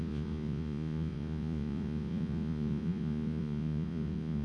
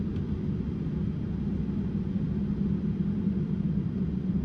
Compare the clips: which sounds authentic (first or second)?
second